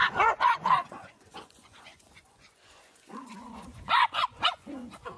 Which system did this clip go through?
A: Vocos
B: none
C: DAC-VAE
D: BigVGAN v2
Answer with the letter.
A